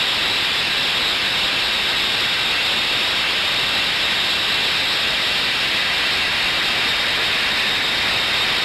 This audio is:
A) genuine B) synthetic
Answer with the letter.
A